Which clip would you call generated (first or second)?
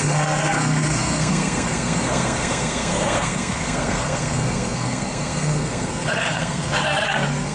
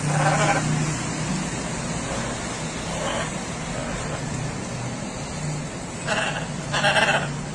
first